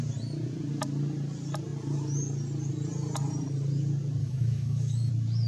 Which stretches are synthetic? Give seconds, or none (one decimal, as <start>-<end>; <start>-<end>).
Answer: 4.2-5.1